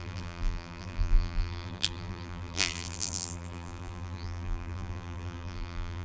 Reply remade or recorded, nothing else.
remade